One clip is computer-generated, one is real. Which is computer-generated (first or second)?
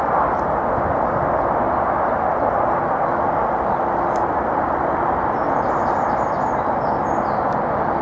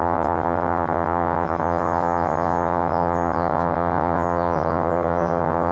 second